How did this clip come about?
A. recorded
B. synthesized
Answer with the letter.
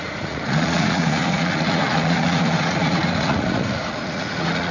B